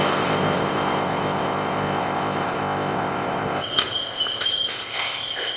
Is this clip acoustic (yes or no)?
no